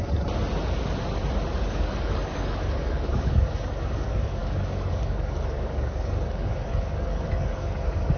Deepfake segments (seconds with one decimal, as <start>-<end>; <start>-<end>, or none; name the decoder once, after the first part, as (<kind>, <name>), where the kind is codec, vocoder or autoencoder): 1.6-8.2 (codec, DAC)